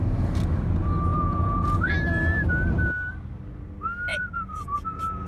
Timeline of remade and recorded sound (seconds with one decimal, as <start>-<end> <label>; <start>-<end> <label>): 0.0-1.1 recorded; 1.1-1.9 remade; 1.9-4.1 recorded; 4.1-5.3 remade